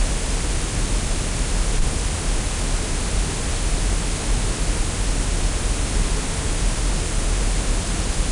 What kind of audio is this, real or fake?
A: real